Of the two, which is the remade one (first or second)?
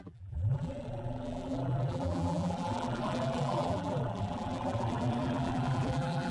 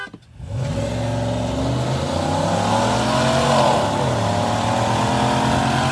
first